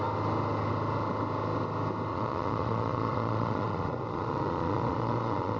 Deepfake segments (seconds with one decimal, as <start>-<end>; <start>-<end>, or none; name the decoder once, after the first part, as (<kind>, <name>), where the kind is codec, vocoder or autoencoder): 2.1-5.6 (vocoder, Vocos)